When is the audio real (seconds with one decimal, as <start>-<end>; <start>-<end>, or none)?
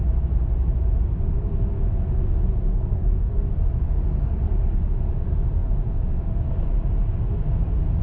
0.0-2.7; 3.4-8.0